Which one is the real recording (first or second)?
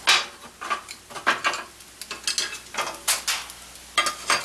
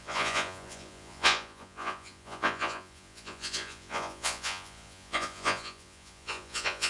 first